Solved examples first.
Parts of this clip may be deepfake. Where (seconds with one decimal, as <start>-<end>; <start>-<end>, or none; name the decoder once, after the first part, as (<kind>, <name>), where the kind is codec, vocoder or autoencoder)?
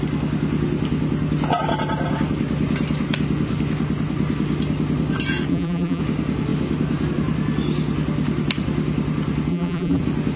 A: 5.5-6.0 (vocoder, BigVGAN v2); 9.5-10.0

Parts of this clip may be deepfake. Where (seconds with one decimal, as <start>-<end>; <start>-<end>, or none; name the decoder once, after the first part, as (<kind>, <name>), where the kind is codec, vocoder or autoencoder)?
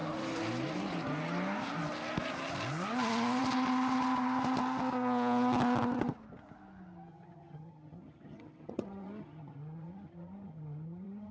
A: 7.1-11.3 (vocoder, HiFi-GAN)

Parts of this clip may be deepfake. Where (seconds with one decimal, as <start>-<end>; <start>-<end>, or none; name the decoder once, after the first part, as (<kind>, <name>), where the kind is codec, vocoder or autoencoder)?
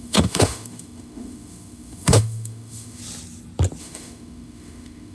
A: 0.0-3.0 (autoencoder, DAC-VAE); 3.8-5.1